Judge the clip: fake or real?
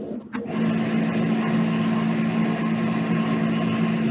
real